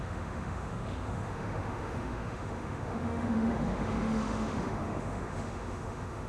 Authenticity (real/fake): fake